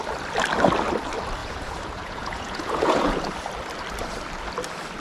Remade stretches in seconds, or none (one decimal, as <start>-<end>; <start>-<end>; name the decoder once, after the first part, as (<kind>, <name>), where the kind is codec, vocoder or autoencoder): 1.4-3.2 (vocoder, Vocos)